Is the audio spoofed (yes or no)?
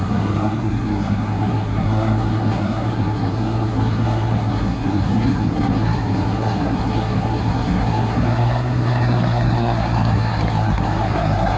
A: yes